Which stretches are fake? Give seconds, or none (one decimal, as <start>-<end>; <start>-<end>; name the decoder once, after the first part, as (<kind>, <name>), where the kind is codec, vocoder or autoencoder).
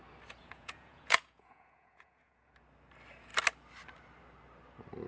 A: 0.4-2.5 (vocoder, Vocos)